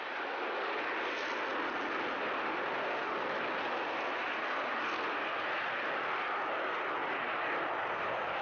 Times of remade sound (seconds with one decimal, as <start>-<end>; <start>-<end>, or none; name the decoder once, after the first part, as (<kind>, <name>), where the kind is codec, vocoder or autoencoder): 0.0-1.5 (vocoder, BigVGAN v2); 5.6-7.0; 7.6-8.4